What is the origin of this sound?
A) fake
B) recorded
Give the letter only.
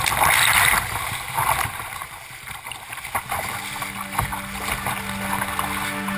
B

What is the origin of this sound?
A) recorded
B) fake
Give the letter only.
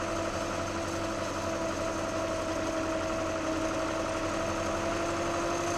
A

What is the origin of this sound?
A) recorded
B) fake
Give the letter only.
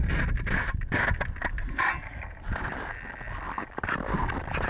A